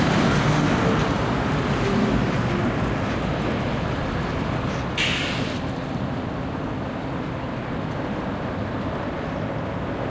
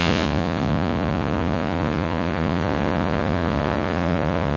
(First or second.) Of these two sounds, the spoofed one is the second